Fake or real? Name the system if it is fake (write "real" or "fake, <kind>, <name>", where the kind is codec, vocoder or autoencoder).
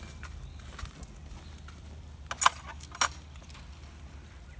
real